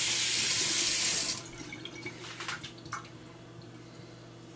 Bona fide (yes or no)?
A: yes